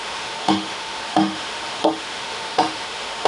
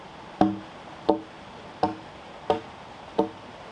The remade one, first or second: first